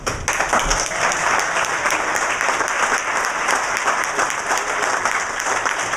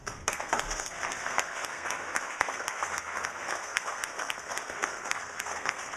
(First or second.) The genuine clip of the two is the first